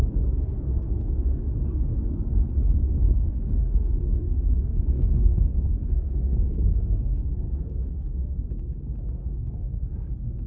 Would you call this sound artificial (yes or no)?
yes